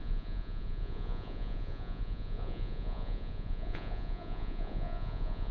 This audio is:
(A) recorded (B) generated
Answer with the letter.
B